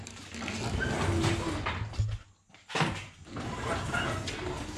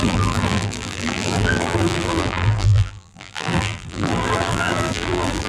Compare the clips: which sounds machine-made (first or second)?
second